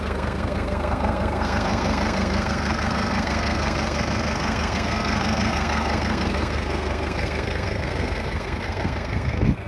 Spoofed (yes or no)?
yes